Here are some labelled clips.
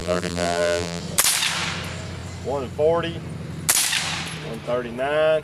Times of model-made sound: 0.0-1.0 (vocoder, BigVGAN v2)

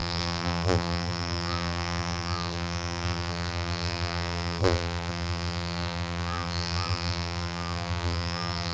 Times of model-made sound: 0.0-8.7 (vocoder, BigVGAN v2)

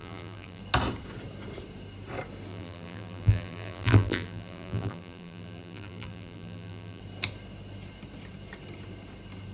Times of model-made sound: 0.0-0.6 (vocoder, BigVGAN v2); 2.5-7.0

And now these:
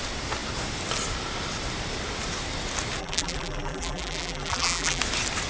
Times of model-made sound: 3.0-5.0 (vocoder, BigVGAN v2)

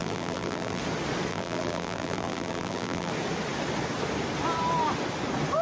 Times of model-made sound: 0.0-0.8 (vocoder, BigVGAN v2); 1.3-3.1

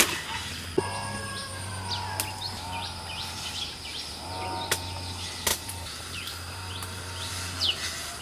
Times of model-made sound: 1.2-1.7 (vocoder, BigVGAN v2); 5.5-7.3